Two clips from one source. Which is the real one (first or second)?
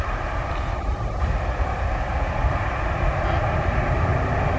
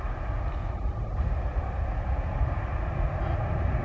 second